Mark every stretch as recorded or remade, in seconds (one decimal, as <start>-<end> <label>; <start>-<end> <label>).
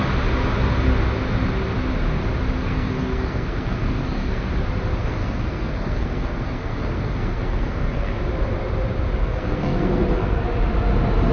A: 0.0-2.6 recorded; 2.6-4.5 remade; 4.5-5.0 recorded; 5.0-8.1 remade; 8.1-9.2 recorded; 9.2-10.4 remade; 10.4-11.3 recorded